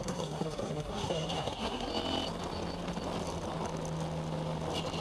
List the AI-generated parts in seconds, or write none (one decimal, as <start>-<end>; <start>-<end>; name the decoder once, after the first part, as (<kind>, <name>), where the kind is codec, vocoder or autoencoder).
0.0-1.9 (codec, SNAC)